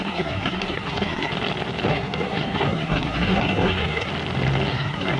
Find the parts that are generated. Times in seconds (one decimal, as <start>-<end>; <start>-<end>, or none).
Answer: 0.0-1.3; 1.9-4.1; 4.7-5.2